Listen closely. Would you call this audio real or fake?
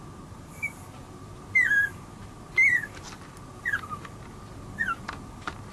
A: real